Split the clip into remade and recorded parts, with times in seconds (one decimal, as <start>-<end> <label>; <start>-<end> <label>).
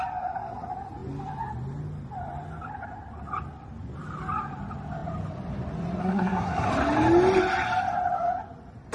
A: 0.0-6.0 recorded; 6.0-6.7 remade; 6.7-8.9 recorded